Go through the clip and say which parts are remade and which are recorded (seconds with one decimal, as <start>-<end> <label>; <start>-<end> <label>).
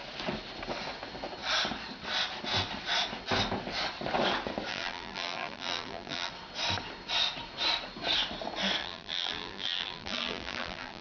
0.0-4.7 recorded; 4.7-6.3 remade; 6.3-8.8 recorded; 8.8-11.0 remade